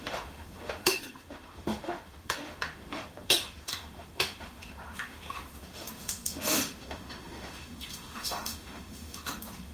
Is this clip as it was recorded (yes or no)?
no